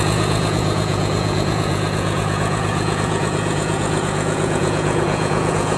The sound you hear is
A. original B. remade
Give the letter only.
B